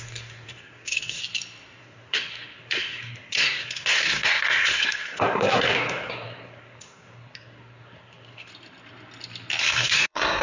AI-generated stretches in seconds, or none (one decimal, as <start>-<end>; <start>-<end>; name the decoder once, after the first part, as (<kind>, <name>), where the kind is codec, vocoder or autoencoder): 0.0-1.2 (codec, SNAC); 1.8-8.5; 9.6-10.4

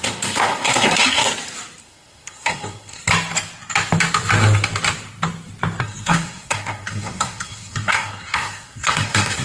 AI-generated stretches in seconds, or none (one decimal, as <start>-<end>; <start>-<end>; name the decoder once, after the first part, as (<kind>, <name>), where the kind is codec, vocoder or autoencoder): 0.0-1.3 (codec, SNAC); 1.8-3.0; 5.8-9.4

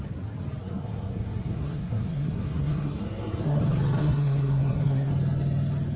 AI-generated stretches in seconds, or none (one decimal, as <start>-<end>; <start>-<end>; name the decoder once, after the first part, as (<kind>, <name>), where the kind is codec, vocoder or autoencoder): 0.6-3.6 (codec, SNAC); 4.0-5.1

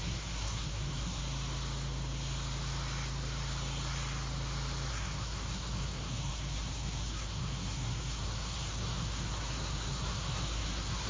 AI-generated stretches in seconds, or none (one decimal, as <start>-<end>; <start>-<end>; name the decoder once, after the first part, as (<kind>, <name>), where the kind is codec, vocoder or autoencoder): 0.0-1.2 (codec, SNAC); 4.9-11.1

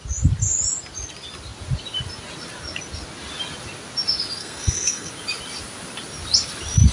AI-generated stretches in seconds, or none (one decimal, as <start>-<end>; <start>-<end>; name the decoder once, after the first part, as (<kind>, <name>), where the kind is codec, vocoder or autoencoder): 4.4-5.1 (codec, SNAC)

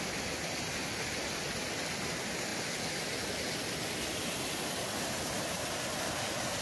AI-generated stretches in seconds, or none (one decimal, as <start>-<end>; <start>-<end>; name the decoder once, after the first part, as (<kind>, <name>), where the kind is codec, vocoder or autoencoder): none

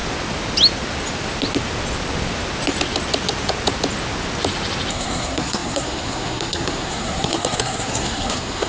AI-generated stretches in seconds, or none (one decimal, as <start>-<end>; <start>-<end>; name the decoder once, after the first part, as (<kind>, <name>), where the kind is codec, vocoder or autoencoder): 4.9-8.7 (codec, SNAC)

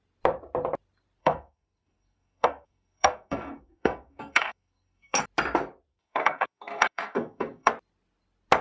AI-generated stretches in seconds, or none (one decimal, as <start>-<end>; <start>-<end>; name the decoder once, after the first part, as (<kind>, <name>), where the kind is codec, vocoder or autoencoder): 1.2-5.2 (codec, SNAC); 5.9-7.7